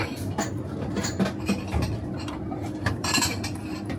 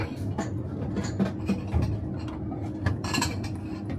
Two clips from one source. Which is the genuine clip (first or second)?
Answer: second